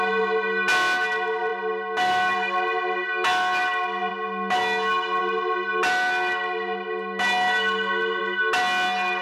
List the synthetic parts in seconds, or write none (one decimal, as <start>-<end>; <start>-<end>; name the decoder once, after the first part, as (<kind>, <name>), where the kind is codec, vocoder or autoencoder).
none